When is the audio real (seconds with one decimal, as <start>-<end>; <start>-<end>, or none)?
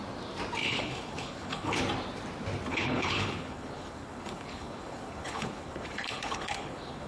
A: 0.0-0.6; 1.8-2.7